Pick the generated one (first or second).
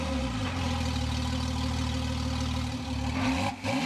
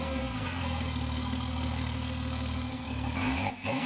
second